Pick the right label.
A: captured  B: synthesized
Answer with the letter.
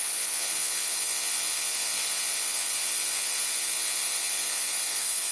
B